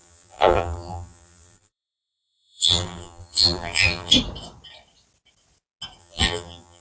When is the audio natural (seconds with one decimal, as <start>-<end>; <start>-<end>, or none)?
4.1-6.0

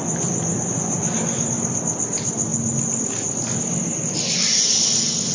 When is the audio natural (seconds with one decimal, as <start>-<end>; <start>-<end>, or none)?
0.0-5.3

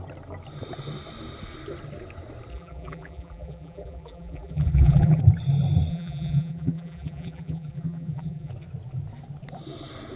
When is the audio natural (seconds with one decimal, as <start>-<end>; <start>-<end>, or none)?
0.0-2.5; 5.2-5.9; 8.5-10.2

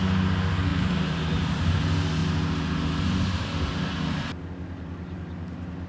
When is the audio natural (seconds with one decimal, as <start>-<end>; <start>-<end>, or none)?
0.0-0.7; 1.8-5.9

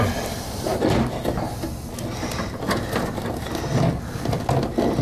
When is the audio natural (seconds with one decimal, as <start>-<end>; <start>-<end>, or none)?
0.0-5.0

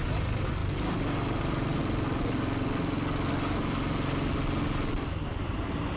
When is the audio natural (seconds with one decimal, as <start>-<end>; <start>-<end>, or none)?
0.6-1.4; 1.8-5.4

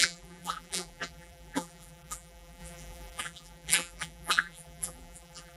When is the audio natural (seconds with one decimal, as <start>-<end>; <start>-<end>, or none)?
none